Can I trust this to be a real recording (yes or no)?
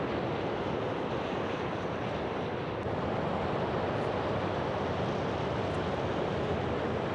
yes